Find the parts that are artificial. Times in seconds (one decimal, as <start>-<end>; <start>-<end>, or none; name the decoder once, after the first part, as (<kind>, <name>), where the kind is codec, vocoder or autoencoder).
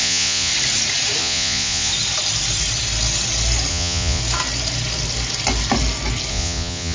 0.0-0.5 (vocoder, Vocos); 1.2-1.9; 3.7-4.2; 6.3-6.9